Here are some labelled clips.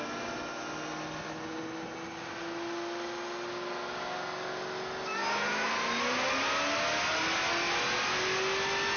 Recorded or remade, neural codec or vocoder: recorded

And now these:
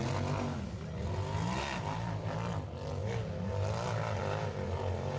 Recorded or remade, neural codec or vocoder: recorded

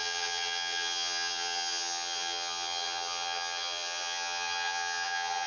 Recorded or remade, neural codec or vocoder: remade, vocoder, HiFi-GAN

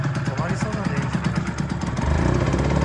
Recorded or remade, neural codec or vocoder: recorded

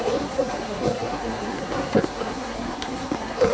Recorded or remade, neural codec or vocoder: remade, codec, SNAC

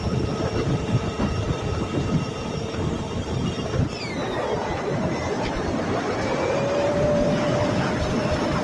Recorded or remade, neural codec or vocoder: remade, vocoder, BigVGAN v2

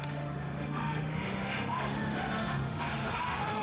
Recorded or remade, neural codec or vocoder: remade, autoencoder, DAC-VAE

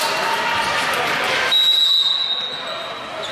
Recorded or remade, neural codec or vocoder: recorded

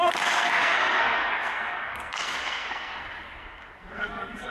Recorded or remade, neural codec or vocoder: remade, codec, SNAC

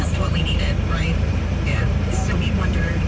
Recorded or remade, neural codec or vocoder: remade, vocoder, BigVGAN v2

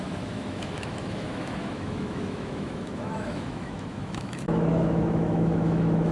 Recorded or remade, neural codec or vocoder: remade, autoencoder, DAC-VAE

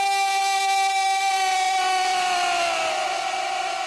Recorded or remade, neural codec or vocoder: recorded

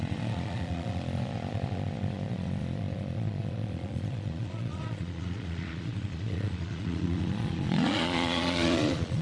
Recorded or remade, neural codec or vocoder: remade, vocoder, Vocos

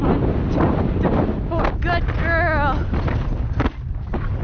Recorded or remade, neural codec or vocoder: recorded